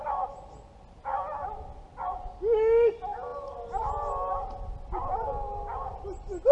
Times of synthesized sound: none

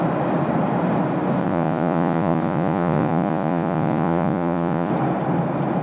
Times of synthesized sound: 1.4-4.9 (vocoder, Vocos)

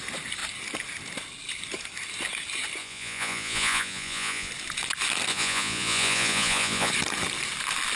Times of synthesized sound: 2.8-4.5 (vocoder, Vocos); 5.3-6.9

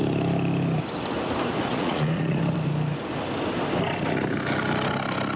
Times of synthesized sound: 1.7-2.4 (vocoder, Vocos)

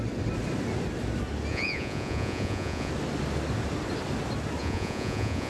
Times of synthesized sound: 1.5-2.9 (vocoder, Vocos); 4.6-5.5

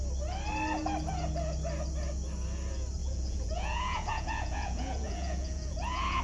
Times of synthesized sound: 3.0-6.2 (vocoder, Vocos)

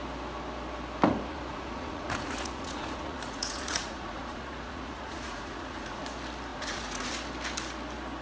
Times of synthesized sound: 1.3-6.0 (vocoder, Vocos); 6.5-7.1

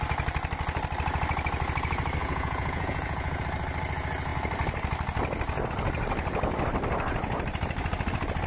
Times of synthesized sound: 2.2-3.4 (vocoder, Vocos)